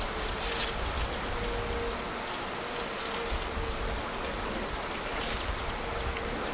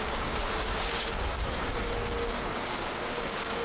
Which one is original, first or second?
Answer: first